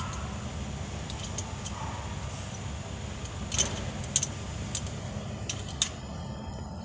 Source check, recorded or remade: recorded